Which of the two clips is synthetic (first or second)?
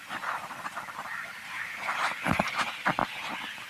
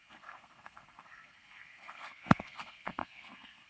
second